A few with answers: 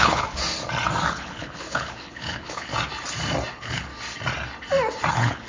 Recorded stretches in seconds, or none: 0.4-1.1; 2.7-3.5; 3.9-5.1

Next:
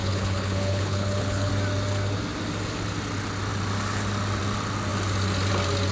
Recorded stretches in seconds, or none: 1.5-5.9

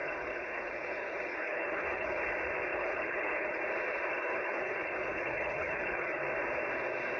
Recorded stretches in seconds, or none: 2.2-2.7; 3.6-4.1; 6.2-7.2

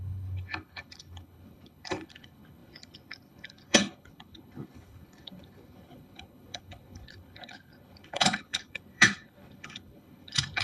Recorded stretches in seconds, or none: none

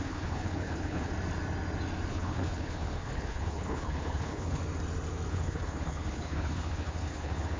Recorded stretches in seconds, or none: 1.1-2.1; 4.6-5.3